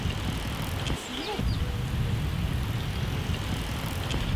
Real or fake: real